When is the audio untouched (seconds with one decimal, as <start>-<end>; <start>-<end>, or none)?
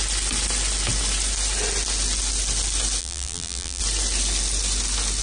0.0-3.0; 3.8-5.2